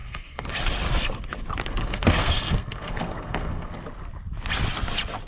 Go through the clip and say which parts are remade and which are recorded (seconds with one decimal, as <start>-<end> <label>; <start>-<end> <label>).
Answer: 0.0-0.5 remade; 0.5-1.8 recorded; 1.8-3.7 remade; 3.7-5.3 recorded